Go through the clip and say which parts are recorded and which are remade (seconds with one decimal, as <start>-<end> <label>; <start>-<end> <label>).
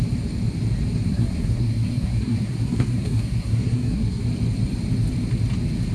0.0-1.1 recorded; 1.1-4.2 remade; 4.2-5.9 recorded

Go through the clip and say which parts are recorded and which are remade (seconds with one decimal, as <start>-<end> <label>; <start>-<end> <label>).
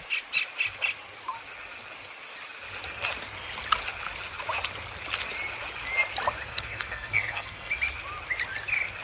0.0-6.5 recorded; 6.5-7.7 remade; 7.7-9.0 recorded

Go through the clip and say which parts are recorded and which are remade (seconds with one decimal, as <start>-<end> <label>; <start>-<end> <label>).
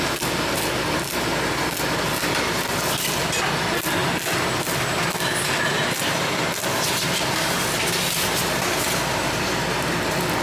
0.0-10.4 recorded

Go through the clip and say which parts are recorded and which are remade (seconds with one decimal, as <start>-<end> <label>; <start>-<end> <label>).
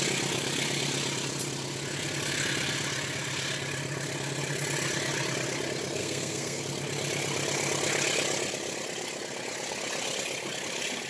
0.0-6.0 recorded; 6.0-6.6 remade; 6.6-11.1 recorded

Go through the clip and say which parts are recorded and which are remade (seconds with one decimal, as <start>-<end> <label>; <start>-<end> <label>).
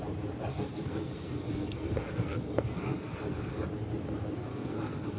0.0-0.5 recorded; 0.5-3.6 remade; 3.6-4.5 recorded; 4.5-5.2 remade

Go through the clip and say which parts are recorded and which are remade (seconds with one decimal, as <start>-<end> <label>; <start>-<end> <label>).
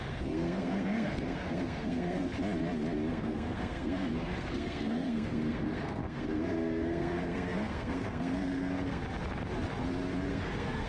0.0-2.3 remade; 2.3-3.1 recorded; 3.1-9.0 remade; 9.0-10.3 recorded; 10.3-10.9 remade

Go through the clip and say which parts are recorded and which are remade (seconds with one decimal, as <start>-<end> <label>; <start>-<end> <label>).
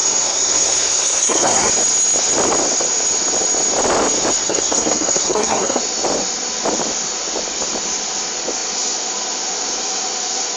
0.0-1.7 remade; 1.7-4.4 recorded; 4.4-5.8 remade; 5.8-10.6 recorded